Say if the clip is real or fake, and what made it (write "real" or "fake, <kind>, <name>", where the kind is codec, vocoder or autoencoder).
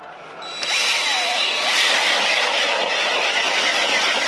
real